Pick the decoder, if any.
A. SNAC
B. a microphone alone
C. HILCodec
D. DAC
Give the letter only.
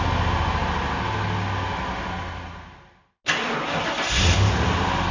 B